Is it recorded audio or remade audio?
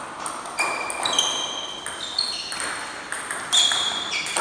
recorded